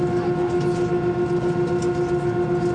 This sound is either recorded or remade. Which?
recorded